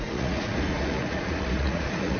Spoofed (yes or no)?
yes